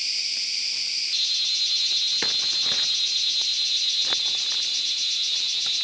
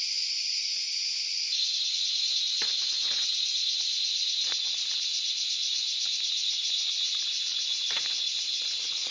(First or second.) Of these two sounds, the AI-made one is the second